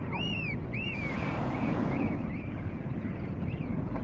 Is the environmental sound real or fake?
fake